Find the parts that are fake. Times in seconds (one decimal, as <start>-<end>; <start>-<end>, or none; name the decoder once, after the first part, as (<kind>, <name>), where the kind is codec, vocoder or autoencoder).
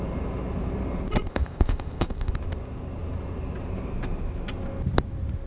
1.3-2.3 (codec, ZipCodec)